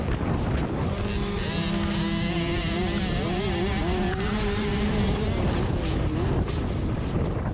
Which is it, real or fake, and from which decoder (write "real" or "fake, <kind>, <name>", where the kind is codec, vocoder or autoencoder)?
real